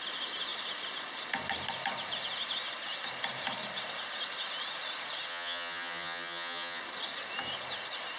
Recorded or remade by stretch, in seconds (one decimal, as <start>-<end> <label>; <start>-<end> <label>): 0.0-5.3 recorded; 5.3-6.8 remade; 6.8-8.2 recorded